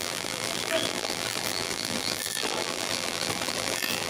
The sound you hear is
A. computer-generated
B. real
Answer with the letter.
A